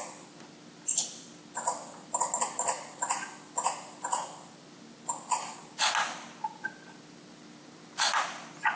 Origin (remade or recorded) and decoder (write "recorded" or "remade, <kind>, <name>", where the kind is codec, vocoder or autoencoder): recorded